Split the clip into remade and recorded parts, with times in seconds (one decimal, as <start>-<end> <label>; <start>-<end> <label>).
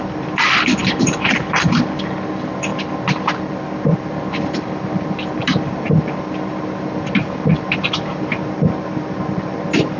0.0-10.0 recorded